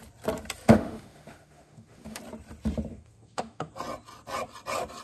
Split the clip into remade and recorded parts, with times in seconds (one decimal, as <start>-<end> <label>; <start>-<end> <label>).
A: 0.0-0.7 recorded; 0.7-2.2 remade; 2.2-2.9 recorded; 2.9-3.7 remade; 3.7-5.0 recorded